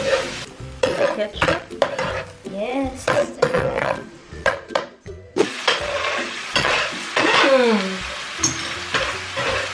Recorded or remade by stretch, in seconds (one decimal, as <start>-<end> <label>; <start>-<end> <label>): 0.0-0.8 recorded; 0.8-1.7 remade; 1.7-2.7 recorded; 2.7-7.4 remade; 7.4-9.7 recorded

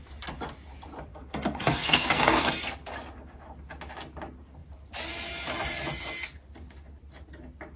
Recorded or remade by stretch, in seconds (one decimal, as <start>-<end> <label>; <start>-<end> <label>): 0.0-1.1 recorded; 1.1-2.5 remade; 2.5-7.8 recorded